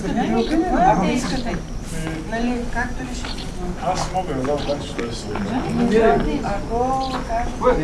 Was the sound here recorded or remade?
recorded